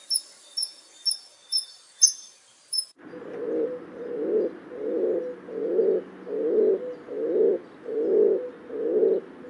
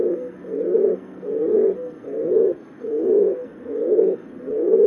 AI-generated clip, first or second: second